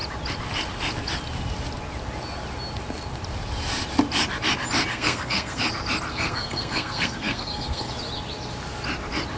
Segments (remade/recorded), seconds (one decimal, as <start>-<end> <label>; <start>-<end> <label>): 0.0-4.9 recorded; 4.9-5.6 remade; 5.6-6.1 recorded; 6.1-7.9 remade; 7.9-9.4 recorded